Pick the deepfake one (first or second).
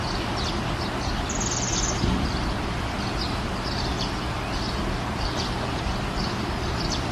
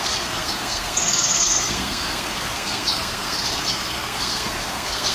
second